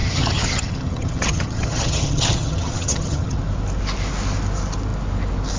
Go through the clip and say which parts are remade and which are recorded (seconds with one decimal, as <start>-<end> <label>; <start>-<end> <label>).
0.0-3.4 remade; 3.4-5.6 recorded